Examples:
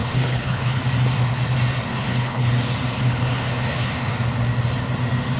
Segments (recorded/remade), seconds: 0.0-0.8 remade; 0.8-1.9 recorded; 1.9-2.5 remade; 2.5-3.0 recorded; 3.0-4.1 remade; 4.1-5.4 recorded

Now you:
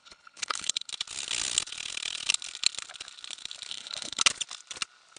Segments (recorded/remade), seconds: 0.0-0.9 remade; 0.9-3.7 recorded; 3.7-4.2 remade; 4.2-5.2 recorded

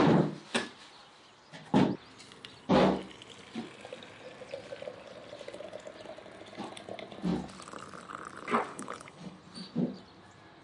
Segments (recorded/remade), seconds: 0.0-8.7 recorded; 8.7-9.4 remade; 9.4-10.6 recorded

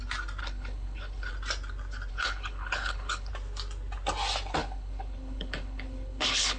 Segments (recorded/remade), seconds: 0.0-0.4 recorded; 0.4-1.3 remade; 1.3-2.1 recorded; 2.1-3.3 remade; 3.3-4.6 recorded; 4.6-6.6 remade

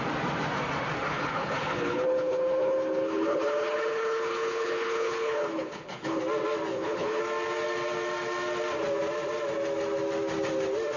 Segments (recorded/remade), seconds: 0.0-1.1 recorded; 1.1-6.2 remade; 6.2-6.7 recorded; 6.7-7.2 remade; 7.2-11.0 recorded

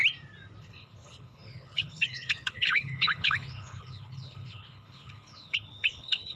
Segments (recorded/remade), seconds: 0.0-0.6 recorded; 0.6-6.4 remade

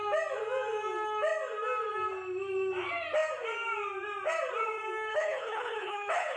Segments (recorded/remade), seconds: 0.0-5.1 recorded; 5.1-6.4 remade